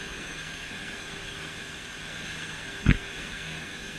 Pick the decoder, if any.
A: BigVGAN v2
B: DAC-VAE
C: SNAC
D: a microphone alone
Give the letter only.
C